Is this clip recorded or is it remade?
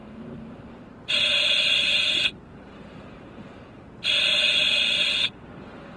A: recorded